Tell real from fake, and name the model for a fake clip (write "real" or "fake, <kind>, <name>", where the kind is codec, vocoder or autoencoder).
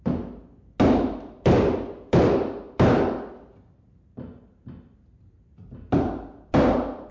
real